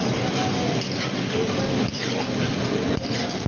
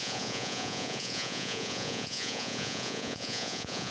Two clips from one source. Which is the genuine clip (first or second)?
first